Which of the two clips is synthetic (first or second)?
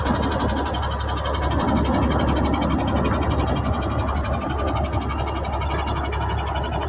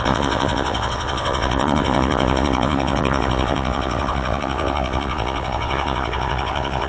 second